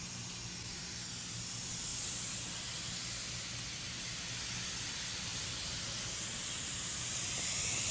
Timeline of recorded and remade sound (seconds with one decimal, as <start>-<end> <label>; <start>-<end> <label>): 0.0-5.3 recorded; 5.3-6.0 remade; 6.0-7.9 recorded